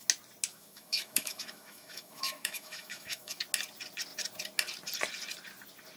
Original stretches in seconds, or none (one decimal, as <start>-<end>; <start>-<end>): 0.0-0.5; 3.4-6.0